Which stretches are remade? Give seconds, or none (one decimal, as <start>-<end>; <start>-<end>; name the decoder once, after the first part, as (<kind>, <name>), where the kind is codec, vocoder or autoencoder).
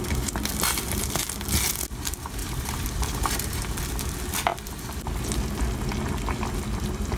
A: 2.4-4.0 (vocoder, BigVGAN v2); 4.5-5.2